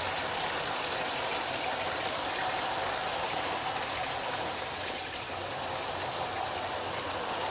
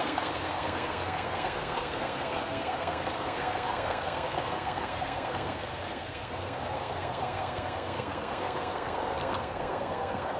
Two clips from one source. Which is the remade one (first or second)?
second